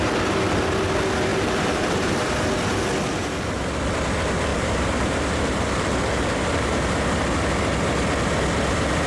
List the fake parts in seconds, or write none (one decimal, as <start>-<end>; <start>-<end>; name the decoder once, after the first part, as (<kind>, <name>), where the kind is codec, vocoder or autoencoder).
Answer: 1.3-2.4 (vocoder, BigVGAN v2); 4.5-6.7